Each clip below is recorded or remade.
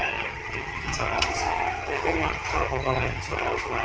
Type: remade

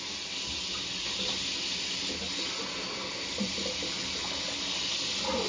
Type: recorded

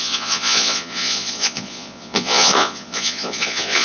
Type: remade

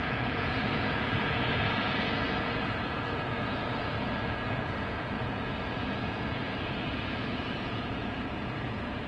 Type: remade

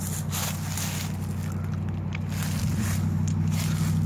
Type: recorded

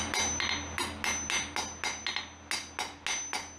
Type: recorded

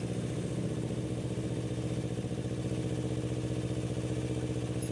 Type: recorded